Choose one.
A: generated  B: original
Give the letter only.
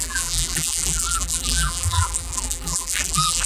A